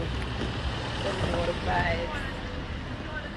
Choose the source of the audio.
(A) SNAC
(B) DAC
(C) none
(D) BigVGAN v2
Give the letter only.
C